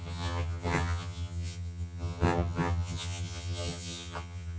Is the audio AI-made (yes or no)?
yes